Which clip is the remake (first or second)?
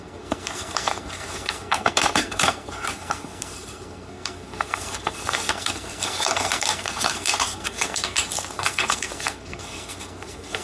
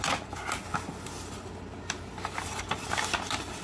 first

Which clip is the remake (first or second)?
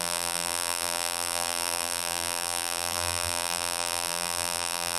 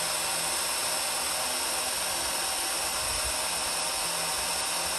first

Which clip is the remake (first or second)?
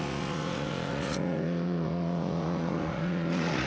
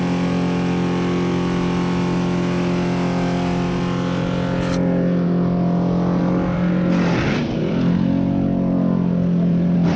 first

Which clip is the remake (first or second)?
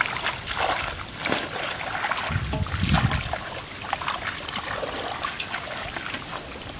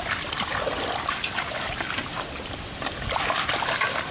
second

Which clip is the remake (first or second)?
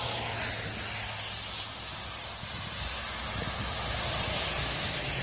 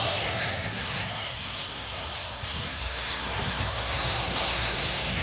second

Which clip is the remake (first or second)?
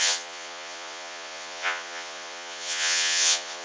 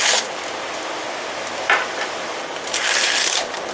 first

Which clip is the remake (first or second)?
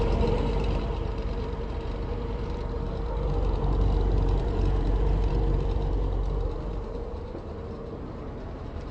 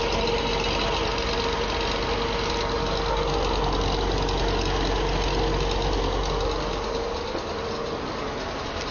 first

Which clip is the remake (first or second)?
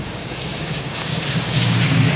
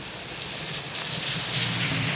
first